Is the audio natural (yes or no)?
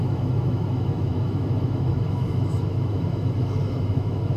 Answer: no